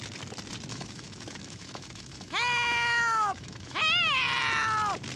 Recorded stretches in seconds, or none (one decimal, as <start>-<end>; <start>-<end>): 0.0-0.7; 3.8-5.2